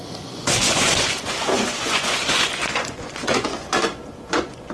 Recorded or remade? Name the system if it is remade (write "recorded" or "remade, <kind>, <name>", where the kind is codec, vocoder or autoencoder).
remade, vocoder, Vocos